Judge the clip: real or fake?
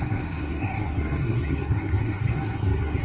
fake